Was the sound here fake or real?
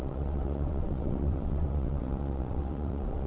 fake